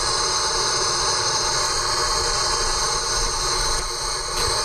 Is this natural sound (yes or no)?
yes